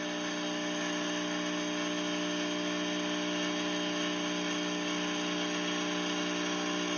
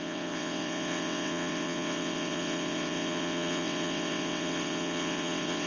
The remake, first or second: second